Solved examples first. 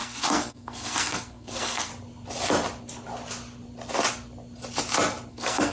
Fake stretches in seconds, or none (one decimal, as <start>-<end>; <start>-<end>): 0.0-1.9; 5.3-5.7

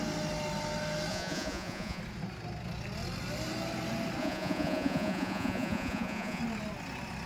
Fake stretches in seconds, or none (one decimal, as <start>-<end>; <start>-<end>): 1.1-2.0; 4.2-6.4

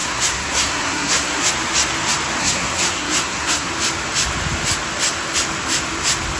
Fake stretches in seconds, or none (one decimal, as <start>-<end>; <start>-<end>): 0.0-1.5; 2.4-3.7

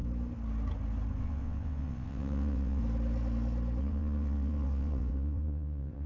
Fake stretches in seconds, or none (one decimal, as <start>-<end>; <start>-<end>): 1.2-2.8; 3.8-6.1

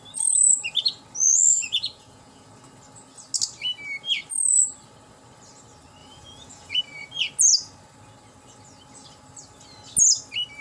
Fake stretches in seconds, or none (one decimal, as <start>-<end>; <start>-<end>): 1.5-2.5; 6.0-6.8

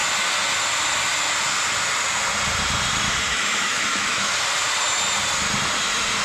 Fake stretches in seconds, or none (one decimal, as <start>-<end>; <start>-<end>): 3.3-4.3

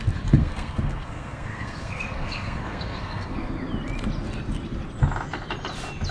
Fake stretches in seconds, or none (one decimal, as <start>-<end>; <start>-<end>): 0.4-3.5

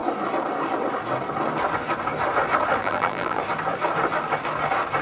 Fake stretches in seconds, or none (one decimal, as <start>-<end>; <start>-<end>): 2.8-3.4